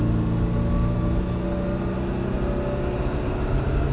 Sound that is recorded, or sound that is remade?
recorded